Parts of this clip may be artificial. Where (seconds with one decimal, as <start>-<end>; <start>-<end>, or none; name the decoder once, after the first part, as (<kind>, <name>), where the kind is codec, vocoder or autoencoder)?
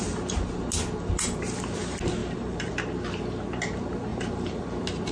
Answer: 2.2-2.7 (vocoder, BigVGAN v2); 4.1-4.6